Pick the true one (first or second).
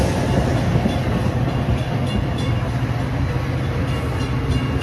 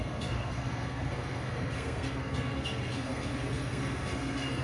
first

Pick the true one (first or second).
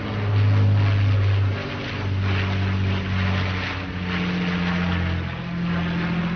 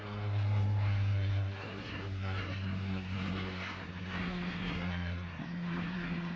first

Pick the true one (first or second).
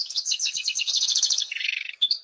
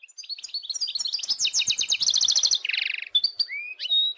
second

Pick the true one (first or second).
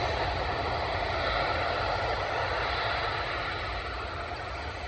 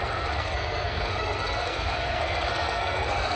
first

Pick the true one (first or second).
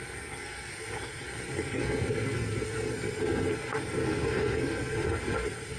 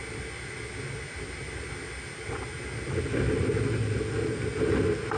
second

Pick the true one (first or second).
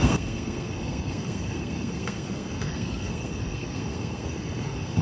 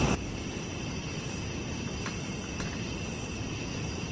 second